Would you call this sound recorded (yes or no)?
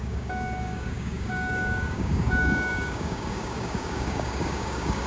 no